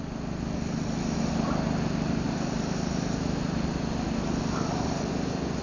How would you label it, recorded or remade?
recorded